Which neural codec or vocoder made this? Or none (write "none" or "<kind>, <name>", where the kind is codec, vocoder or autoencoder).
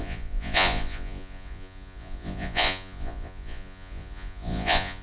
vocoder, Vocos